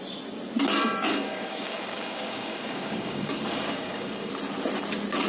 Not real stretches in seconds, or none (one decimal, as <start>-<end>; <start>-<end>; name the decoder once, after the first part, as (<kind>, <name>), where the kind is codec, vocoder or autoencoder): 1.1-4.3 (codec, DAC)